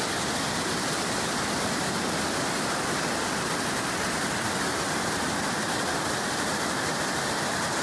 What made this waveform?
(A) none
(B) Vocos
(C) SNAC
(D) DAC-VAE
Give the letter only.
A